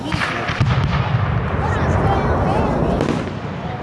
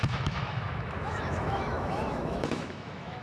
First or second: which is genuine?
first